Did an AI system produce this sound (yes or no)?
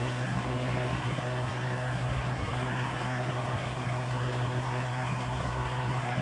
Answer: yes